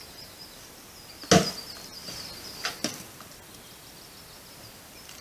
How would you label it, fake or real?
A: real